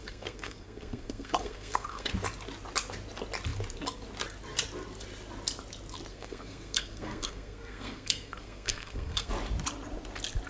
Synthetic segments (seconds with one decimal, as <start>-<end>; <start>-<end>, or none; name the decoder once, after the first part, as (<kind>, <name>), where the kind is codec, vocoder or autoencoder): 0.0-2.1 (codec, SNAC); 6.1-9.3